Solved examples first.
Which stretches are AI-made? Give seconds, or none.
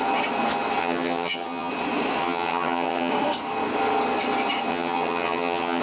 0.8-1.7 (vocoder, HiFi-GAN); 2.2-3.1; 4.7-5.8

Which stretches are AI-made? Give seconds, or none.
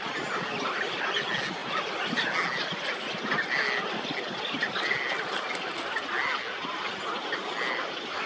none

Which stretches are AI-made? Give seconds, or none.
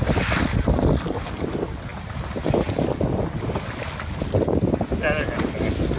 none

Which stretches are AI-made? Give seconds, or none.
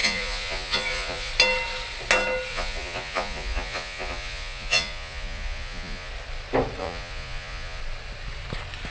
0.0-1.3 (vocoder, Vocos); 2.5-6.1; 6.8-7.8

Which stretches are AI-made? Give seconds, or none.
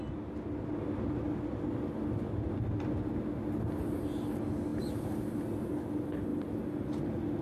none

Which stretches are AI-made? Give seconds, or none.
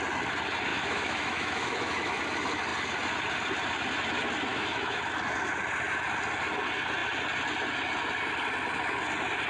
0.7-2.2 (autoencoder, DAC-VAE); 4.5-5.0